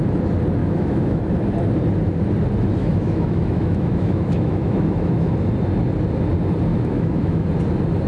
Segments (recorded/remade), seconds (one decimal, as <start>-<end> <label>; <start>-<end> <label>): 0.0-0.6 recorded; 0.6-1.2 remade; 1.2-2.8 recorded; 2.8-5.3 remade; 5.3-6.7 recorded; 6.7-7.5 remade; 7.5-8.1 recorded